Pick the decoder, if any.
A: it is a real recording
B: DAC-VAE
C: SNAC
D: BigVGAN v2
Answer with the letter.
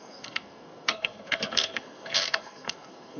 C